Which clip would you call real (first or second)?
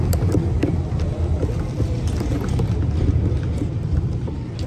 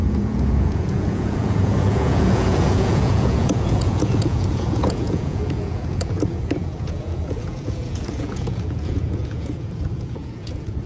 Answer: first